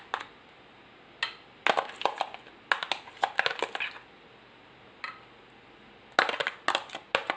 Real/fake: real